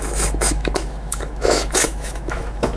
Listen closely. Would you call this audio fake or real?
fake